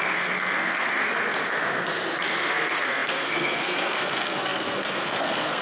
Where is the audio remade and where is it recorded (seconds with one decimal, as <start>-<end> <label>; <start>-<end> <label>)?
0.0-1.0 remade; 1.0-2.5 recorded; 2.5-5.6 remade